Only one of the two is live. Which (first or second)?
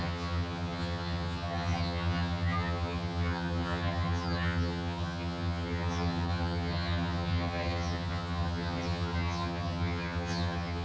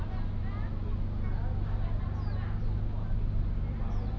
second